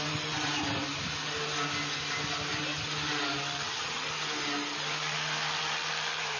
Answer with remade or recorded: recorded